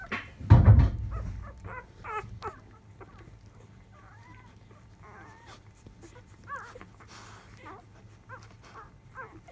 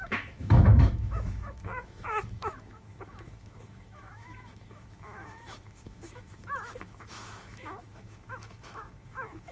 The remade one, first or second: second